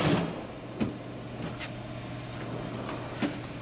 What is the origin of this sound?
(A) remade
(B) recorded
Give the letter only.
B